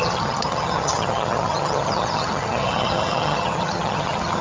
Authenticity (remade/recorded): remade